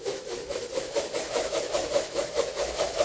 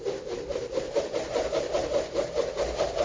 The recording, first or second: second